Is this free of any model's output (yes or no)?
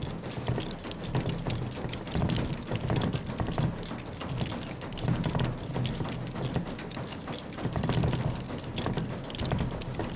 yes